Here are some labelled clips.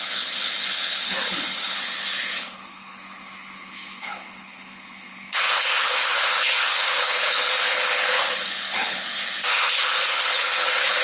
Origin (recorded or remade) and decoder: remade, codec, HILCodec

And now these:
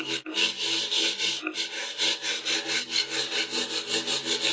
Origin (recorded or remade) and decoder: recorded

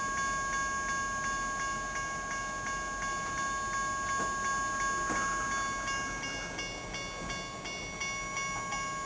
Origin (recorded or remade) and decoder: recorded